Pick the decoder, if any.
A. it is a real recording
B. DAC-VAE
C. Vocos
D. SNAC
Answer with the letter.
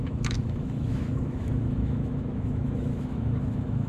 B